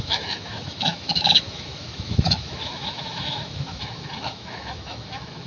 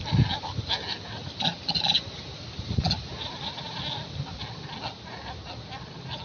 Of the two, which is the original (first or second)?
second